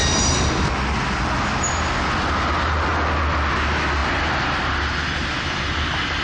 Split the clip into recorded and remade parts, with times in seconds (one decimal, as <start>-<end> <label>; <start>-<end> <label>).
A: 0.0-6.2 recorded